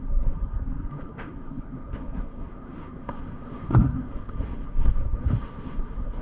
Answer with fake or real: fake